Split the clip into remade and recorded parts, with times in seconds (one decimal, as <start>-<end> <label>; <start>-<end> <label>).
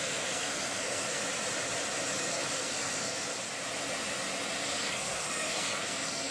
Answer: 0.0-1.2 remade; 1.2-2.2 recorded; 2.2-3.3 remade; 3.3-4.6 recorded; 4.6-6.3 remade